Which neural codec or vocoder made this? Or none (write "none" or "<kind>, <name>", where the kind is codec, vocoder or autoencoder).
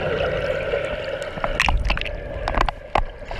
none